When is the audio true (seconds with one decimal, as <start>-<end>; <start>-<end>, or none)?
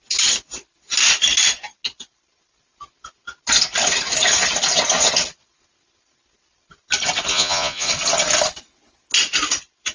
0.0-7.3; 7.9-9.9